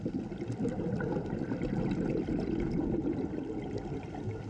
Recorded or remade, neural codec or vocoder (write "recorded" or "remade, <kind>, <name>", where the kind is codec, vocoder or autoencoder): recorded